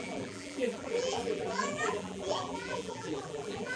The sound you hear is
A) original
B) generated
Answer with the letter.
B